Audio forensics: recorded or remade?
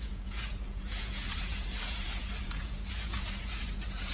remade